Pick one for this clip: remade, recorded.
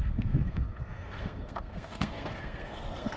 remade